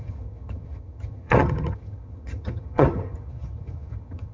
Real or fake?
fake